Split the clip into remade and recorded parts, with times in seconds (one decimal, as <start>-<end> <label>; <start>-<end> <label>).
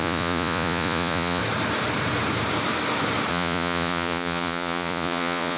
0.0-1.4 remade; 1.4-3.3 recorded; 3.3-5.6 remade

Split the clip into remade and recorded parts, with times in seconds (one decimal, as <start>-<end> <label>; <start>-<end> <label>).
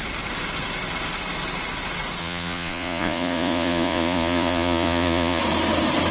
0.0-2.2 recorded; 2.2-5.4 remade; 5.4-6.1 recorded